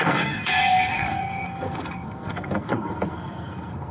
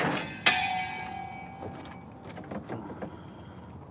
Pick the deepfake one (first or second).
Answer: first